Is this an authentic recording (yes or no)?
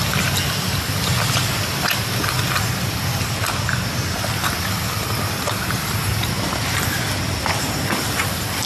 yes